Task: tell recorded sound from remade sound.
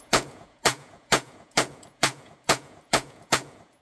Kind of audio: remade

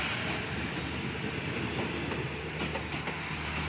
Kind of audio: recorded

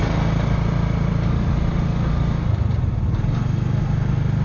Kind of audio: recorded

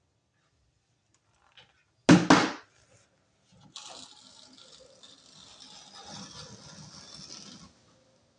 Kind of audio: recorded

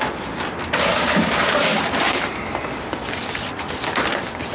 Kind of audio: recorded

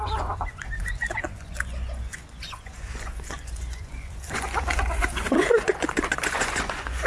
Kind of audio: remade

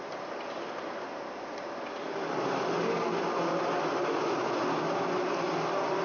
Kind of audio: recorded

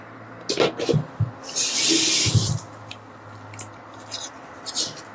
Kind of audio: recorded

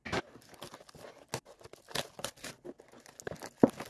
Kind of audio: recorded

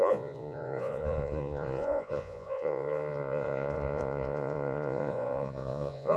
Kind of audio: remade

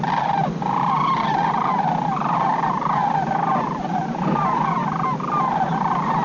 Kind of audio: recorded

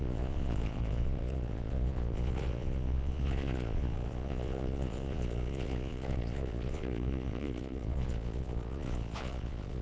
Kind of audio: remade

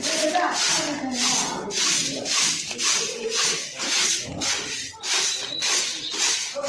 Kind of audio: recorded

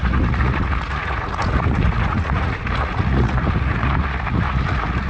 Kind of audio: remade